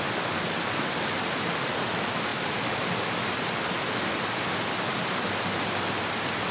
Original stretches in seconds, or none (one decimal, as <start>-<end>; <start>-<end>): 0.0-6.5

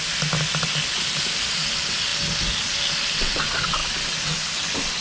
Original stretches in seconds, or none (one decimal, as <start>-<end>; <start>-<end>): 0.0-5.0